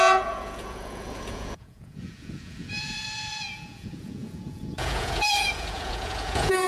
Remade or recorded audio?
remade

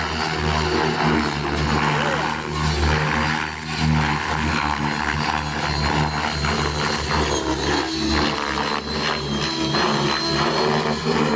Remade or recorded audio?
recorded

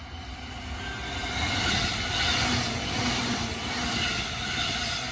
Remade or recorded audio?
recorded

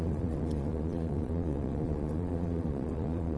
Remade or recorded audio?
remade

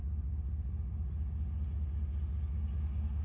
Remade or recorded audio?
recorded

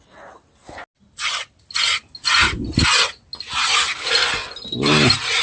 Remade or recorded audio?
recorded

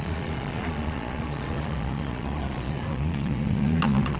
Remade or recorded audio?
remade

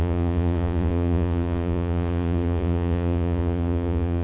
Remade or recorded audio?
remade